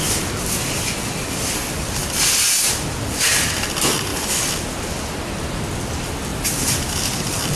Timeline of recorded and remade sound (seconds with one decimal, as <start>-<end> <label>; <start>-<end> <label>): 0.0-6.3 recorded; 6.3-6.9 remade; 6.9-7.6 recorded